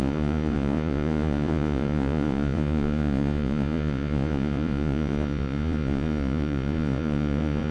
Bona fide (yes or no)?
no